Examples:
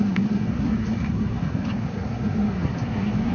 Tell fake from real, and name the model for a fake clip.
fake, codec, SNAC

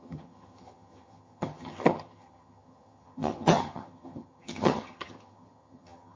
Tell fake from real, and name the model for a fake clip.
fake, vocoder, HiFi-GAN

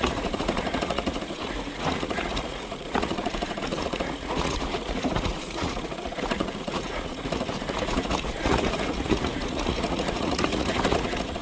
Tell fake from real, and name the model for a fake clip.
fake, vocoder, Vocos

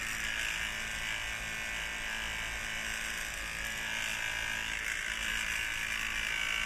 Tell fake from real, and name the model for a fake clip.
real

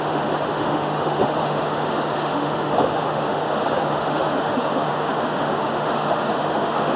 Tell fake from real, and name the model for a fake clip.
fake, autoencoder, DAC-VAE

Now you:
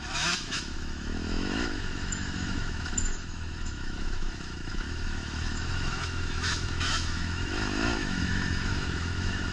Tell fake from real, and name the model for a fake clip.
fake, autoencoder, DAC-VAE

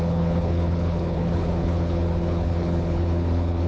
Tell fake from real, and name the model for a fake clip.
fake, codec, HILCodec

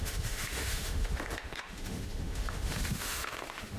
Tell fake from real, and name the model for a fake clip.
fake, autoencoder, DAC-VAE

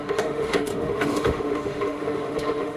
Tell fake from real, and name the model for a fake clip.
fake, autoencoder, DAC-VAE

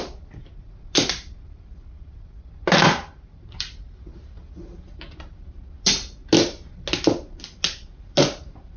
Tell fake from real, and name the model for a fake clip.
real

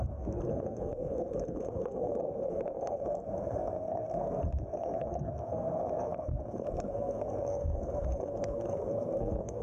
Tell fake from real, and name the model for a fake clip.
fake, codec, SNAC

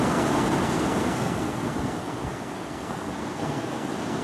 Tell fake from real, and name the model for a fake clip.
fake, codec, SNAC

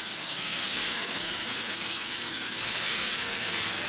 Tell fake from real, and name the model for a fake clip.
fake, codec, SNAC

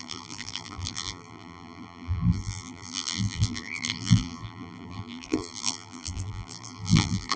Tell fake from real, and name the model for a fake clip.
fake, vocoder, BigVGAN v2